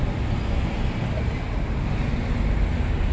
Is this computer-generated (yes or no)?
no